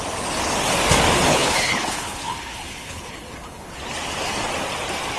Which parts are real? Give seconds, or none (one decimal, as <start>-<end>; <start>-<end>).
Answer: 0.0-1.3; 3.8-5.2